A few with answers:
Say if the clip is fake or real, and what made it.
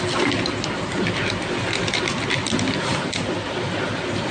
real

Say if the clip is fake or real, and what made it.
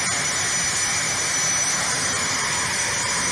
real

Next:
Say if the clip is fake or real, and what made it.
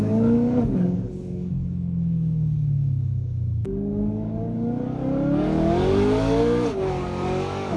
fake, codec, DAC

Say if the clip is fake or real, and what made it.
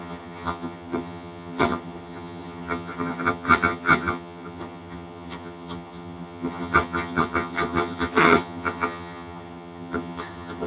fake, vocoder, HiFi-GAN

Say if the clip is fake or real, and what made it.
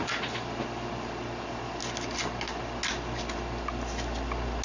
real